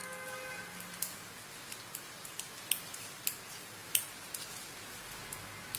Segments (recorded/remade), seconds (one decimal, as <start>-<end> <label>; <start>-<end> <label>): 0.0-5.8 recorded

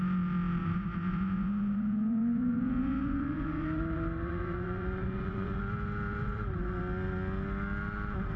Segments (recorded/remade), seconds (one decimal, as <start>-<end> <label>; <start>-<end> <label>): 0.0-0.6 recorded; 0.6-5.6 remade; 5.6-6.2 recorded; 6.2-6.8 remade; 6.8-8.4 recorded

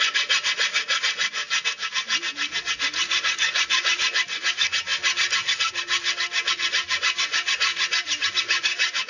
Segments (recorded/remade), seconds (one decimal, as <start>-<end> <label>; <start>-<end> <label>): 0.0-1.4 remade; 1.4-2.6 recorded; 2.6-4.9 remade; 4.9-6.5 recorded; 6.5-7.7 remade; 7.7-8.3 recorded; 8.3-9.1 remade

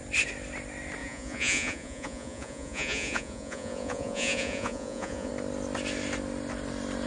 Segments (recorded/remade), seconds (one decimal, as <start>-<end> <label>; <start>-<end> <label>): 0.0-1.0 recorded; 1.0-5.3 remade; 5.3-7.1 recorded

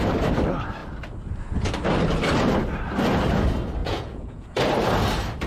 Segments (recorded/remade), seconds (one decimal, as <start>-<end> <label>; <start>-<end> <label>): 0.0-3.8 recorded; 3.8-4.5 remade; 4.5-5.5 recorded

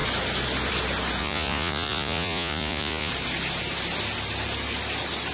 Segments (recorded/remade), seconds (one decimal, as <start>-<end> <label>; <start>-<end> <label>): 0.0-1.2 recorded; 1.2-3.1 remade; 3.1-5.3 recorded

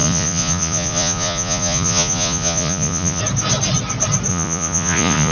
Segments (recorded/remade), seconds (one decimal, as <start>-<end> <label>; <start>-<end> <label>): 0.0-3.2 remade; 3.2-4.3 recorded; 4.3-5.3 remade